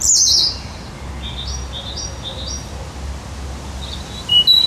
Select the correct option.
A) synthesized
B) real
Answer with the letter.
B